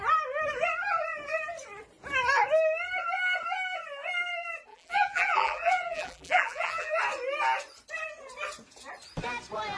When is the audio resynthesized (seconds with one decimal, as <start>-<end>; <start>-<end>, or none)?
4.7-7.0